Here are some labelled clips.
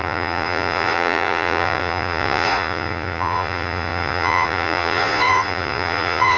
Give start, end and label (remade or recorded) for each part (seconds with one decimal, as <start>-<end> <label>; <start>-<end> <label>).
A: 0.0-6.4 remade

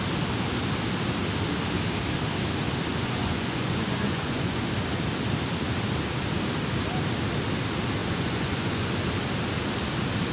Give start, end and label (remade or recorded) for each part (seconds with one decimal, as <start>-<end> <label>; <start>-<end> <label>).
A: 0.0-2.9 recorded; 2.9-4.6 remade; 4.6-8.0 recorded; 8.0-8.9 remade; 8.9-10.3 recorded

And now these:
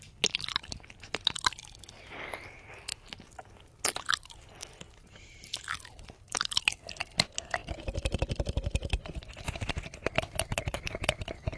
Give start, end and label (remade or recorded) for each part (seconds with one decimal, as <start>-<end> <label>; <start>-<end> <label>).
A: 0.0-11.6 recorded

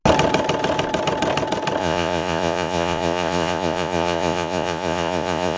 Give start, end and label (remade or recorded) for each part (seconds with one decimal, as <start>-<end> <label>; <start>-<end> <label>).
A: 0.0-1.8 recorded; 1.8-5.6 remade